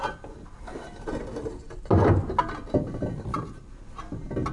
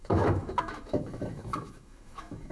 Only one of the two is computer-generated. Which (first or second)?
second